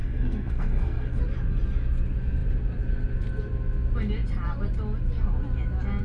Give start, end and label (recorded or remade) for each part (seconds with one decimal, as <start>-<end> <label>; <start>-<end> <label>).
0.0-1.2 remade; 1.2-6.0 recorded